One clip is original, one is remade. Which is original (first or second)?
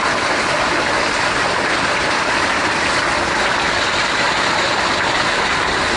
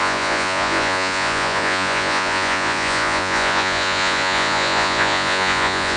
first